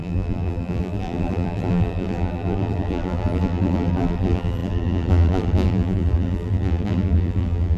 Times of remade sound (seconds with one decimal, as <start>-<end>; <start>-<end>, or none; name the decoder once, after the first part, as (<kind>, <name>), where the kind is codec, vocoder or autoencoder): 0.0-7.8 (vocoder, BigVGAN v2)